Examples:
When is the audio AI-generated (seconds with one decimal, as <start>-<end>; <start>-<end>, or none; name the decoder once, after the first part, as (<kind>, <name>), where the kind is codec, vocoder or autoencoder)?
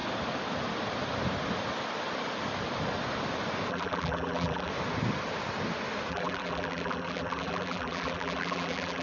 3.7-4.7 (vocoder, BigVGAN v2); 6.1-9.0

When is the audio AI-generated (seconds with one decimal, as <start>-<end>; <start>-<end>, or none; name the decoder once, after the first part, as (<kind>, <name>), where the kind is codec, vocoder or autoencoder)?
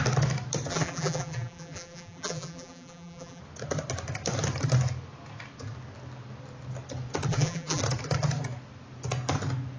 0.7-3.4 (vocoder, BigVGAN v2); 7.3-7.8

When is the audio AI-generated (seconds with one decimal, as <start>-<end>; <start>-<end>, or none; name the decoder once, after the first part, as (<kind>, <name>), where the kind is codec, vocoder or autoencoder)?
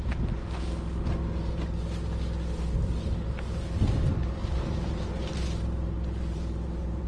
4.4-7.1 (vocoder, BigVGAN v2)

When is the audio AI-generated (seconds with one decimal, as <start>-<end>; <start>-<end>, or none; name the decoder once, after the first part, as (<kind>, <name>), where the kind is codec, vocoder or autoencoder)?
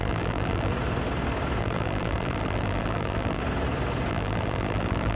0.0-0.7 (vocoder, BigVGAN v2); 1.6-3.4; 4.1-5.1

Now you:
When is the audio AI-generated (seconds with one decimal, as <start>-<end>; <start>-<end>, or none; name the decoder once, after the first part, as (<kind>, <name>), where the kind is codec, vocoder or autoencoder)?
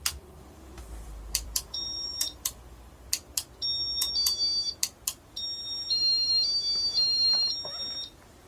0.0-3.1 (vocoder, BigVGAN v2)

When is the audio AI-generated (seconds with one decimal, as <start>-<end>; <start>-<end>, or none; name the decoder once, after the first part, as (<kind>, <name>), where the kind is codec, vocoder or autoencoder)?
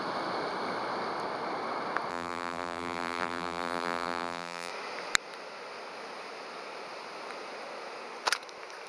2.1-4.7 (vocoder, BigVGAN v2)